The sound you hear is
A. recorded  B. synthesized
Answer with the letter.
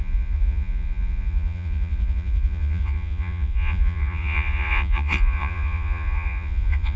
B